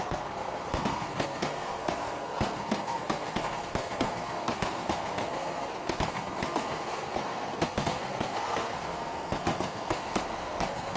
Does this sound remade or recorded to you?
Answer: remade